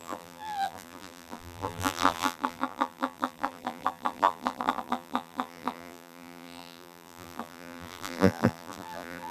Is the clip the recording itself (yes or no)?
no